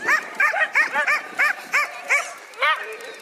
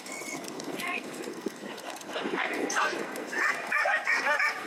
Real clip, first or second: first